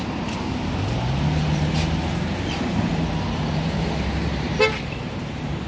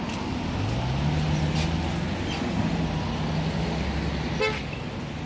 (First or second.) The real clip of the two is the second